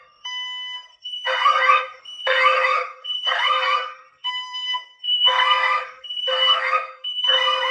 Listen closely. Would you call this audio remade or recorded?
remade